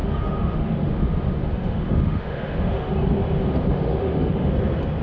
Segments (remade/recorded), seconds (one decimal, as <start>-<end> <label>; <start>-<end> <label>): 0.0-0.9 remade; 0.9-1.4 recorded; 1.4-2.9 remade; 2.9-3.7 recorded; 3.7-4.5 remade; 4.5-5.0 recorded